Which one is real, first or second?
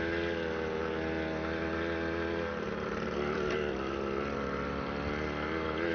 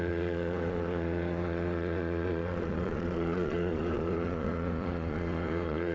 first